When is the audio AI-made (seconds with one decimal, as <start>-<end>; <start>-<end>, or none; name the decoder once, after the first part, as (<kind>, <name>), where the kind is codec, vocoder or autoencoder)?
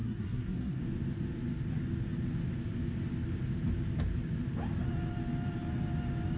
0.0-0.8 (codec, SNAC)